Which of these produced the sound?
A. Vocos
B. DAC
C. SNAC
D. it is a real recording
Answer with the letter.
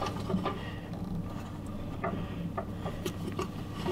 D